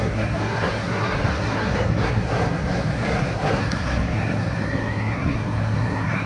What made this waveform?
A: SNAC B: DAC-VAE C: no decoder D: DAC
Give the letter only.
A